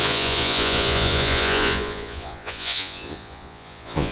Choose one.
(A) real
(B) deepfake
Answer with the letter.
B